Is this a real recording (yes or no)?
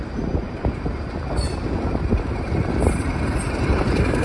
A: no